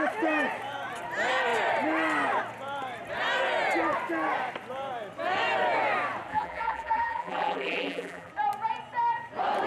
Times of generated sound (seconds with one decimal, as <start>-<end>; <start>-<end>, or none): 6.3-8.3